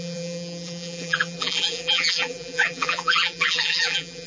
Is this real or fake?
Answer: fake